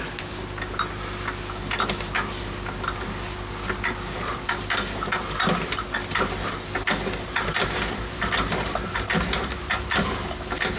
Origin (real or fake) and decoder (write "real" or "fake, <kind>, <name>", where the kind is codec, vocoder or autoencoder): real